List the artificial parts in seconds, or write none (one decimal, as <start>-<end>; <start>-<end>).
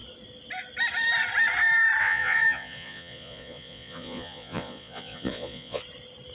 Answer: 2.0-5.8